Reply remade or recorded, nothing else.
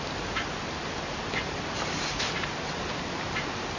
recorded